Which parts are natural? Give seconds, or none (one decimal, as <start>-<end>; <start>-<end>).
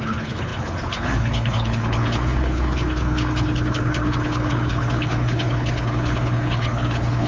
none